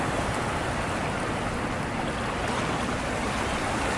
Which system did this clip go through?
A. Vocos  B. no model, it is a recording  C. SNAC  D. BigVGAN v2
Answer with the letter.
B